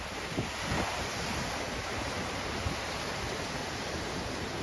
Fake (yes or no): no